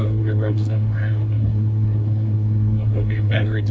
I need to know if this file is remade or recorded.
remade